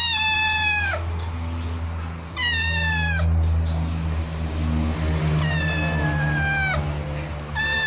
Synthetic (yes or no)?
no